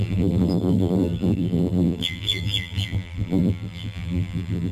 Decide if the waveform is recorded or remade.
remade